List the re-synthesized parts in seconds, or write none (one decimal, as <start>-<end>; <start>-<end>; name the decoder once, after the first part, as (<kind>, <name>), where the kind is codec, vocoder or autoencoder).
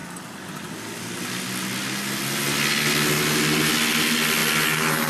none